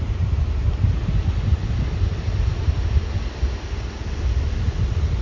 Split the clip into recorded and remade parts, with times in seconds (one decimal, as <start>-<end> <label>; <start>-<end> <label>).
0.0-5.2 recorded